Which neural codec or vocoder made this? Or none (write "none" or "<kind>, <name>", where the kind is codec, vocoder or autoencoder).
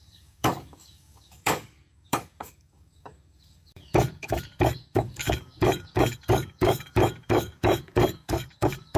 codec, DAC